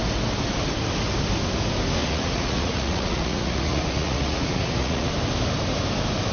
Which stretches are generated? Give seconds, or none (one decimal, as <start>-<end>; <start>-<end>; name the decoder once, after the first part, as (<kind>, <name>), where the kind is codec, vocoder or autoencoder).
2.0-5.1 (vocoder, Vocos)